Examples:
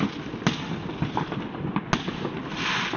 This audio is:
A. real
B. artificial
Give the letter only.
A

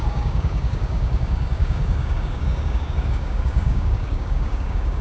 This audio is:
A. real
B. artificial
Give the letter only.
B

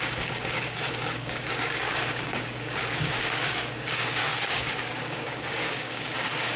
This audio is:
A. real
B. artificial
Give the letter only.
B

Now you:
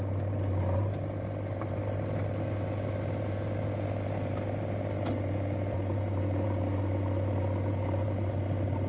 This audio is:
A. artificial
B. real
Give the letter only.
B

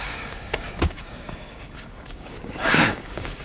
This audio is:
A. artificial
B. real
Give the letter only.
A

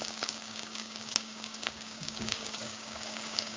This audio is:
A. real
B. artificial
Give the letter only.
B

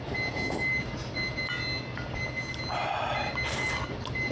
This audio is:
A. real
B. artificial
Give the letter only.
A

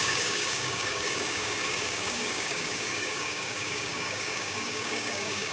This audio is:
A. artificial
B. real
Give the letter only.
A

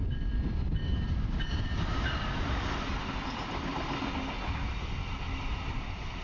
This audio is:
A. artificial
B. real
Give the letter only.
B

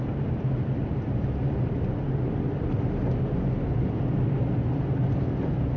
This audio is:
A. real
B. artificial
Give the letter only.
A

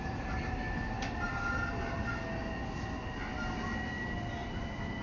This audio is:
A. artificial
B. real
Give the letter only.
B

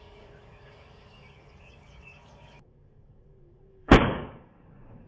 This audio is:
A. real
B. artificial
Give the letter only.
B